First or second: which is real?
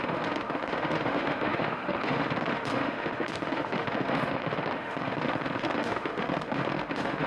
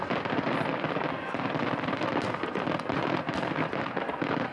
second